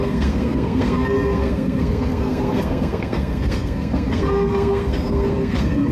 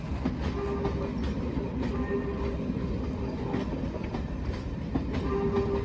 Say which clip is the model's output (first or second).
first